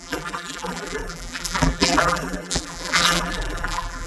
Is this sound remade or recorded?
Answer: remade